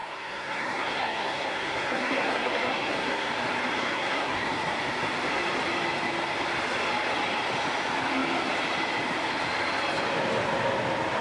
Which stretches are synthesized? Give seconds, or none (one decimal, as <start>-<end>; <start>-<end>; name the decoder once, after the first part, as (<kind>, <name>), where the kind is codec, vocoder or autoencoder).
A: 0.0-3.3 (codec, SNAC); 3.8-4.5